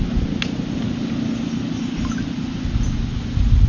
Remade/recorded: recorded